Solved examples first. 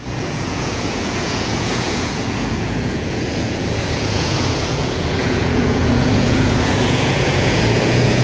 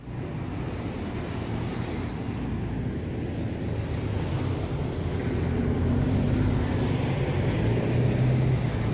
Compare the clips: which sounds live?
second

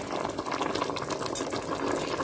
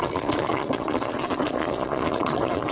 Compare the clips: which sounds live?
first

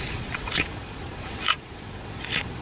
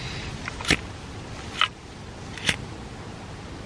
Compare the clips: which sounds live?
second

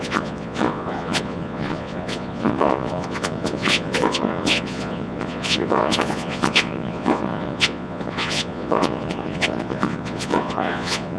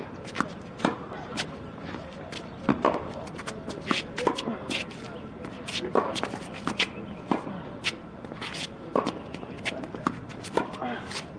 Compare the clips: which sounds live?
second